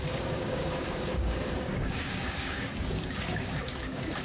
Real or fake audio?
fake